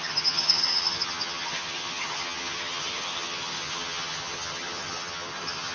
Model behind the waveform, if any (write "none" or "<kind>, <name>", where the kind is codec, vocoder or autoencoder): vocoder, HiFi-GAN